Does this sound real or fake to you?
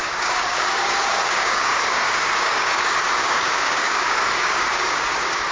fake